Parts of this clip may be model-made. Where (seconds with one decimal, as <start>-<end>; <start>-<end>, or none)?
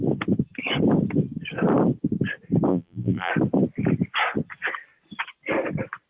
2.7-3.3